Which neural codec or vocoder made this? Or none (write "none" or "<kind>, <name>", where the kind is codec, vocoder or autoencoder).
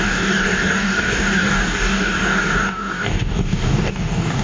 codec, DAC